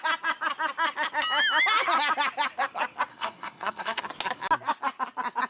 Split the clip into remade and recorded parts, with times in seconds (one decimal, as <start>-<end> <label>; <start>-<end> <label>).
0.0-3.1 recorded; 3.1-4.0 remade; 4.0-5.5 recorded

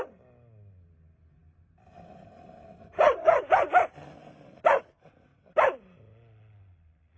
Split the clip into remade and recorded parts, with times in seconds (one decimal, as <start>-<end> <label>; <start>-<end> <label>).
0.0-5.3 recorded; 5.3-6.0 remade; 6.0-7.2 recorded

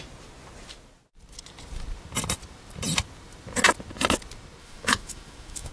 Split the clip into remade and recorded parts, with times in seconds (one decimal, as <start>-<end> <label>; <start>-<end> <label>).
0.0-4.6 recorded; 4.6-5.7 remade

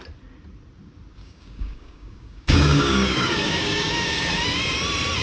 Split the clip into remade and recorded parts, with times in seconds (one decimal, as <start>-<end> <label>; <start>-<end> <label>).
0.0-1.2 recorded; 1.2-4.3 remade; 4.3-5.2 recorded